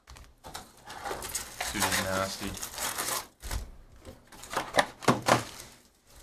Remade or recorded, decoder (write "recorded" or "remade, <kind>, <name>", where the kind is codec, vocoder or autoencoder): recorded